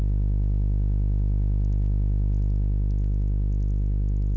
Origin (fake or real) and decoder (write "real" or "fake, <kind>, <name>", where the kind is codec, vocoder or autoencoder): real